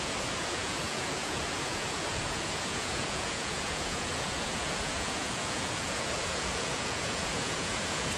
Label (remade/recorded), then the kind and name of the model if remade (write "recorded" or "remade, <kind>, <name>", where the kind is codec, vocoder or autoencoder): remade, vocoder, Vocos